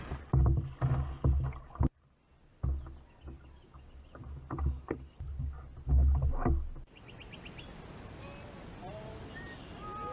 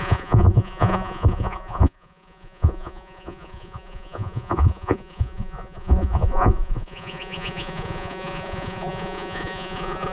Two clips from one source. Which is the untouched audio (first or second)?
first